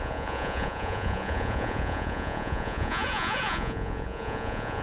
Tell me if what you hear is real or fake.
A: fake